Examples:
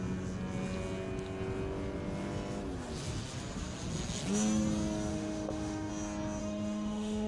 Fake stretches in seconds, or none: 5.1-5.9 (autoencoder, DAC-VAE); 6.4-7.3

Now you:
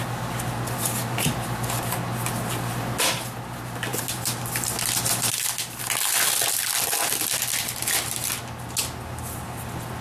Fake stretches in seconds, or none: none

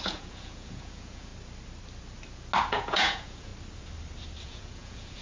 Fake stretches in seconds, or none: 0.0-1.3 (vocoder, Vocos); 2.6-3.5; 4.4-5.2

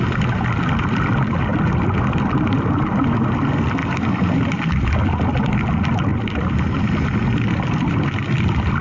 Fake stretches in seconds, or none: 1.5-3.0 (vocoder, BigVGAN v2); 3.8-4.9; 6.1-7.4

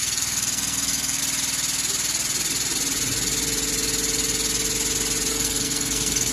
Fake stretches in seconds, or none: 0.0-1.2 (codec, SNAC); 5.3-6.3

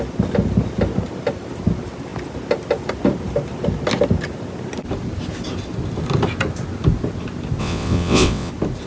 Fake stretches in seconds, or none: 7.6-8.5 (vocoder, WaveNeXt)